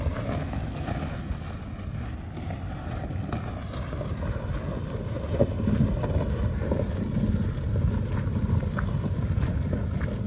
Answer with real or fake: real